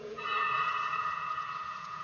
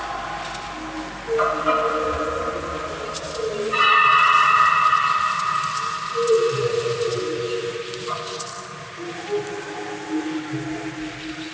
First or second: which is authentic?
second